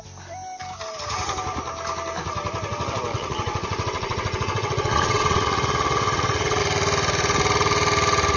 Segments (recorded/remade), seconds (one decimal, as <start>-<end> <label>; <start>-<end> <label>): 0.0-3.1 recorded; 3.1-6.6 remade; 6.6-8.4 recorded